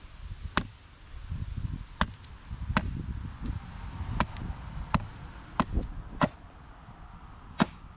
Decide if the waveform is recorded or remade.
recorded